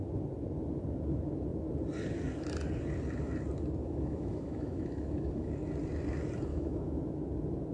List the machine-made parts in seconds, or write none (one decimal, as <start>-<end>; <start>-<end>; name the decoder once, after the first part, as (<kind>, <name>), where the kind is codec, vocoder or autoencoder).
3.8-5.5 (autoencoder, DAC-VAE); 6.5-7.0